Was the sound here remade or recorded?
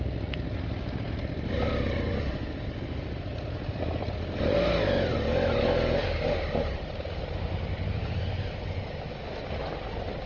recorded